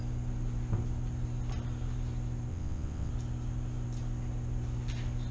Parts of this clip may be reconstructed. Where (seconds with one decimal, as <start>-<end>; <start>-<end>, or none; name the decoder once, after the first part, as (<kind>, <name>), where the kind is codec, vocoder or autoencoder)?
2.5-3.1 (vocoder, WaveNeXt)